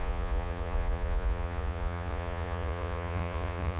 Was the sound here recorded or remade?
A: remade